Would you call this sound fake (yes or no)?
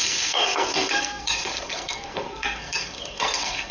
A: yes